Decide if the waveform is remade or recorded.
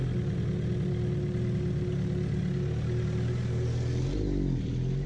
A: recorded